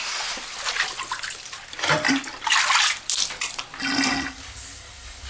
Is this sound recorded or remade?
recorded